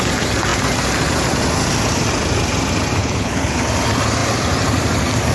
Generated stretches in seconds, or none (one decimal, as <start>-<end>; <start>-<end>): 3.0-3.6